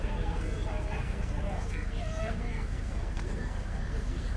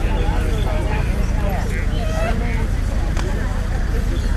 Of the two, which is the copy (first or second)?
first